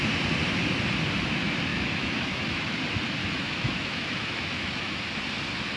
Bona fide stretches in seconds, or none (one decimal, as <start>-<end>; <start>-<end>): 0.0-1.7; 2.8-3.2; 5.0-5.8